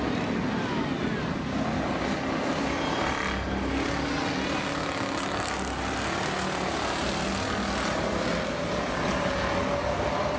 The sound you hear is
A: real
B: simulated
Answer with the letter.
A